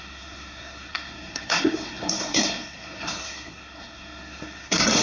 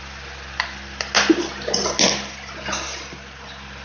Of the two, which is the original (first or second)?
second